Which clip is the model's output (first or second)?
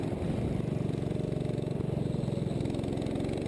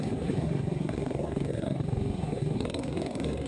second